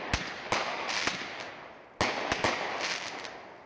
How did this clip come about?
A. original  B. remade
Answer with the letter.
A